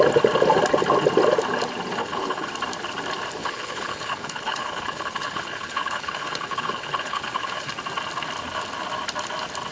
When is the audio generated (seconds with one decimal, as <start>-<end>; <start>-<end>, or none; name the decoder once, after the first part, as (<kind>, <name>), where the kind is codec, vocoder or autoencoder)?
2.0-2.5 (codec, HILCodec); 3.4-7.7